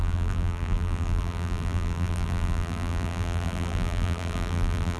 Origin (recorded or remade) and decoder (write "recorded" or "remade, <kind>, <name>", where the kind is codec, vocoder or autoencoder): remade, vocoder, BigVGAN v2